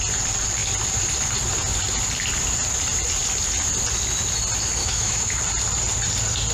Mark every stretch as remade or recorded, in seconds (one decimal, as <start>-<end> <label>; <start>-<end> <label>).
0.0-4.8 recorded; 4.8-5.4 remade; 5.4-6.5 recorded